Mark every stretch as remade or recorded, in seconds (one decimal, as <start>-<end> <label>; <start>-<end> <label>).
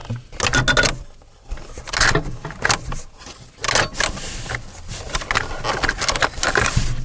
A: 0.0-7.0 recorded